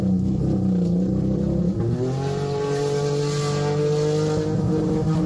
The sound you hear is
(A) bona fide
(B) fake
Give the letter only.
A